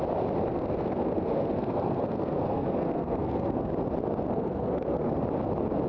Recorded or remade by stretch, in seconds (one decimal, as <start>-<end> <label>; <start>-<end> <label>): 0.0-0.5 recorded; 0.5-3.7 remade; 3.7-4.3 recorded; 4.3-5.1 remade; 5.1-5.9 recorded